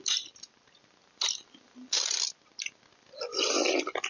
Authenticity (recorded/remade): recorded